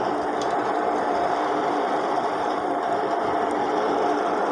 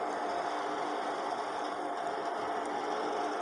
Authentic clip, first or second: second